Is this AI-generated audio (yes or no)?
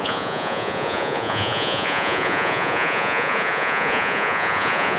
yes